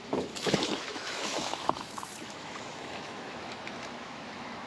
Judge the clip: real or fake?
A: fake